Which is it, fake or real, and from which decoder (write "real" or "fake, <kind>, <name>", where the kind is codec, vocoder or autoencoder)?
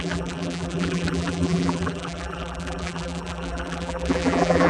fake, vocoder, BigVGAN v2